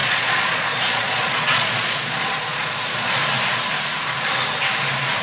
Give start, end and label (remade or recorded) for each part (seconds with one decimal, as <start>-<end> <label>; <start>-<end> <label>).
0.0-3.2 remade; 3.2-5.2 recorded